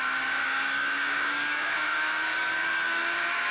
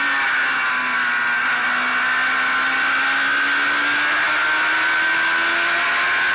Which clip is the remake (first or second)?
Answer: first